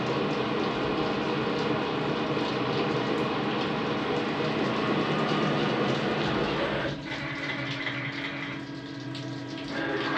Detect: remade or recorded recorded